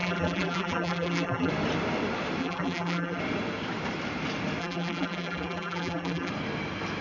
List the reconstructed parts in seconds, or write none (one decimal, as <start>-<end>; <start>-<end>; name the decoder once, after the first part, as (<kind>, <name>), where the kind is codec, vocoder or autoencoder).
0.0-1.5 (vocoder, BigVGAN v2); 2.4-3.2; 4.6-6.3